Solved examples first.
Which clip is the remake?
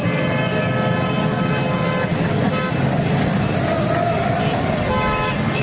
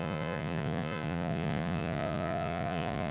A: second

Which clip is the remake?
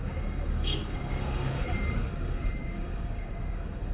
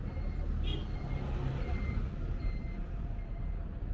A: first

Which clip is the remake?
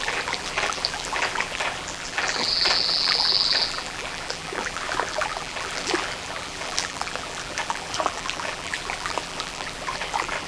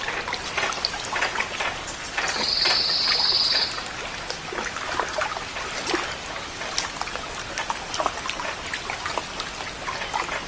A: first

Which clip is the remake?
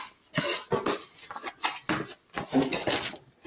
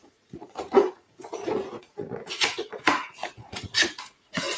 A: second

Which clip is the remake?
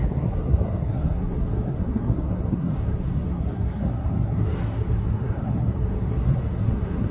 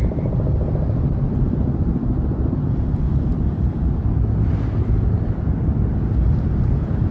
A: first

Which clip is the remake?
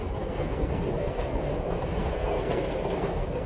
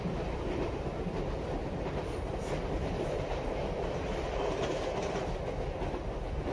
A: first